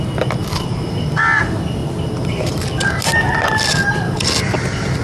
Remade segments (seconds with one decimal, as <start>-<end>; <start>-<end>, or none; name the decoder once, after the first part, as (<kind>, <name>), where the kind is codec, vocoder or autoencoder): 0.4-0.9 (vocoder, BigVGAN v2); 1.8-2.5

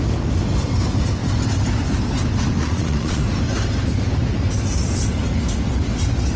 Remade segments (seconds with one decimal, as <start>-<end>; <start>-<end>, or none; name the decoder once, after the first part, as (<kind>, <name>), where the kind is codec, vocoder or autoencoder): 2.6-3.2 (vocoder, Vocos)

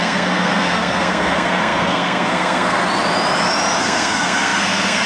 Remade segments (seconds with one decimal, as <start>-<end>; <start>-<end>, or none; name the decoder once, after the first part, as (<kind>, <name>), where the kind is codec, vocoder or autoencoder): 0.0-2.8 (codec, SNAC); 3.8-5.1

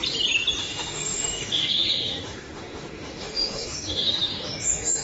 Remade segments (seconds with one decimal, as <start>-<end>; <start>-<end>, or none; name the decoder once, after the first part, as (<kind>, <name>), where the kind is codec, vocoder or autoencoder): 0.6-5.0 (autoencoder, DAC-VAE)

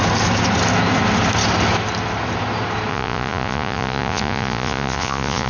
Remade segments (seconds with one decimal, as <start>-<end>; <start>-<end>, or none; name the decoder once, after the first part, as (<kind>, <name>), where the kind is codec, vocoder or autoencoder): 2.9-5.5 (vocoder, Vocos)

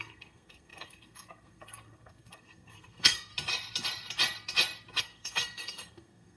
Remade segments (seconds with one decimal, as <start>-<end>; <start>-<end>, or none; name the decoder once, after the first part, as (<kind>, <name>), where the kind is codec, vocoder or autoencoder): 0.0-3.3 (codec, SNAC); 5.0-6.4

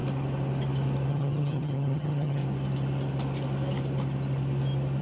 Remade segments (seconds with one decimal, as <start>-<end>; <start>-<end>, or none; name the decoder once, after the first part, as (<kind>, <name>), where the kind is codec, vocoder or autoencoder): 1.1-2.4 (vocoder, HiFi-GAN)

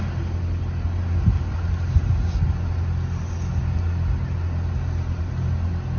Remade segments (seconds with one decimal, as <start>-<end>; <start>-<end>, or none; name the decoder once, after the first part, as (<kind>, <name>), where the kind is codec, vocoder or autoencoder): none